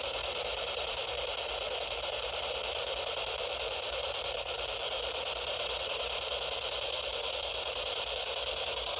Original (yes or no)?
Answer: no